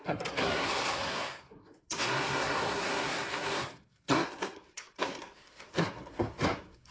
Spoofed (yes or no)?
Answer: yes